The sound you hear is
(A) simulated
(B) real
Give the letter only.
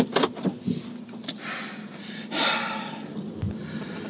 B